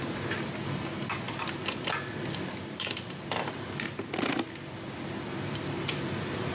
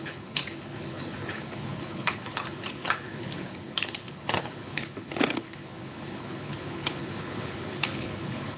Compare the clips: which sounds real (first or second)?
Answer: first